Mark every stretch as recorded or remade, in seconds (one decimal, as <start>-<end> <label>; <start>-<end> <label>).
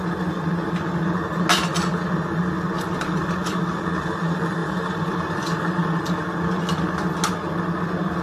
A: 0.0-4.6 recorded; 4.6-6.0 remade; 6.0-8.2 recorded